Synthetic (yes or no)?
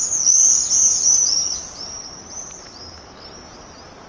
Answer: no